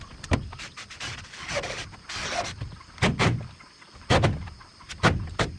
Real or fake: real